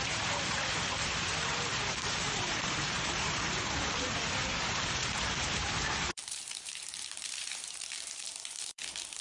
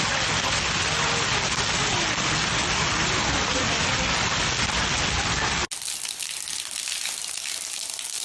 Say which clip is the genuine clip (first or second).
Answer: second